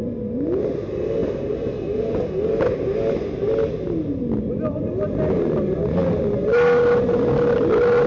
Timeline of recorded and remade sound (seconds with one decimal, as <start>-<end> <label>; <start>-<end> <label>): 0.0-8.1 recorded